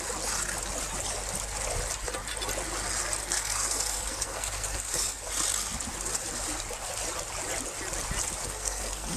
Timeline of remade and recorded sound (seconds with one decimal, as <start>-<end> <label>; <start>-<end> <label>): 0.0-3.2 recorded; 3.2-5.3 remade; 5.3-8.4 recorded; 8.4-9.2 remade